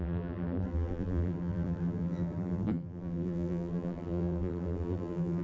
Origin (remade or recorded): remade